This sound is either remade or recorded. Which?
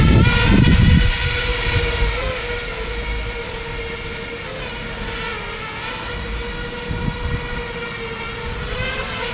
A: recorded